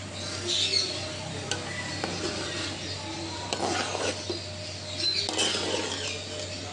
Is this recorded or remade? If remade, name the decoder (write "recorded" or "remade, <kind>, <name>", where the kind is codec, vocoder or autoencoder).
recorded